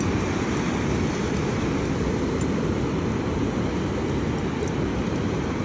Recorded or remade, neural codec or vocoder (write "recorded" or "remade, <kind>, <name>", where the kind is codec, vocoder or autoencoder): recorded